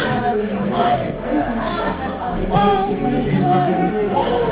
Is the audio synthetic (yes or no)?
yes